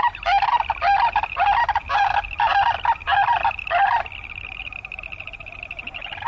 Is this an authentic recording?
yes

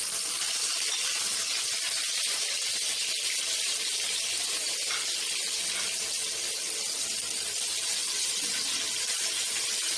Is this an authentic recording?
yes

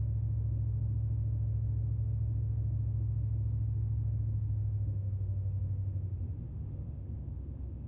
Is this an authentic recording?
no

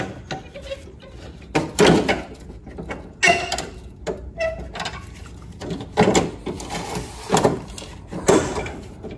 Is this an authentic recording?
yes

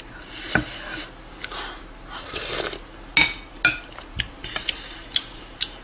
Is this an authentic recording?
yes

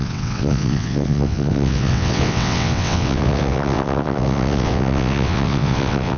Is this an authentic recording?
no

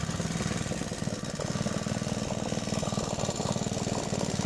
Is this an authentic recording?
yes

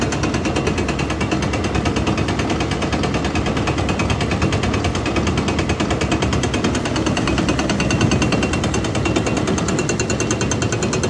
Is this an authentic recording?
yes